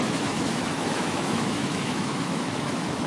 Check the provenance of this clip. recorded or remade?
remade